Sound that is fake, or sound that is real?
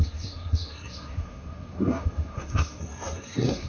fake